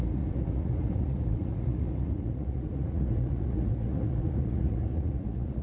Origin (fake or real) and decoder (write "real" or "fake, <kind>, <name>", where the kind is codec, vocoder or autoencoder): fake, vocoder, Vocos